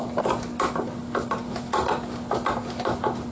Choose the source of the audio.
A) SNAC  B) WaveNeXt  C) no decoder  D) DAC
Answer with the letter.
C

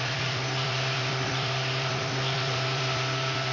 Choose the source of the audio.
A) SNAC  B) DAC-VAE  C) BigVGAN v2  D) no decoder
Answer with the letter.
C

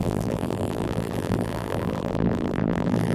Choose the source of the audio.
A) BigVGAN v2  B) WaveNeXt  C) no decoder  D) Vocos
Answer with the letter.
A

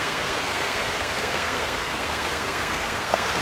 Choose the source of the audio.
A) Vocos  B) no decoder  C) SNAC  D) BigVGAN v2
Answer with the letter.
C